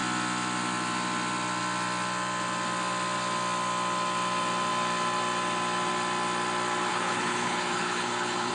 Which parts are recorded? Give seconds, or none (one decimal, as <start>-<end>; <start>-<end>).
0.0-6.9